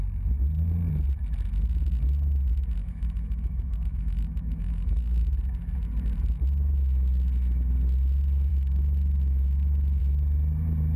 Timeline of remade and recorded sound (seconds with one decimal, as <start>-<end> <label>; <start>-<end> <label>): 0.0-2.8 recorded; 2.8-5.2 remade; 5.2-8.5 recorded; 8.5-10.0 remade; 10.0-11.0 recorded